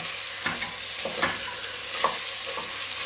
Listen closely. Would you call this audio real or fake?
real